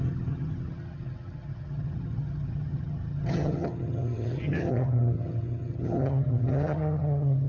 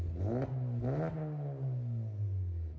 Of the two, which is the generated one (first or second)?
first